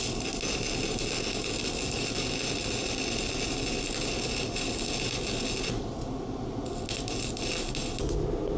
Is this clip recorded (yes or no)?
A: yes